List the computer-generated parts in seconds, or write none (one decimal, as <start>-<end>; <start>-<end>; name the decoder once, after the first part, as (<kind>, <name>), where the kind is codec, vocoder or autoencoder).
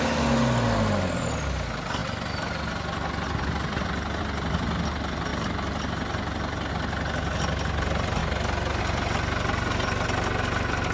none